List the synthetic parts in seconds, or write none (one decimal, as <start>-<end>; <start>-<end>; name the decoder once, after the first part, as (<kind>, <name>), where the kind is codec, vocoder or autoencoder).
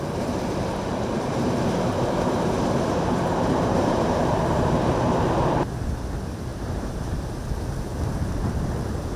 0.9-5.1 (vocoder, BigVGAN v2); 6.5-7.1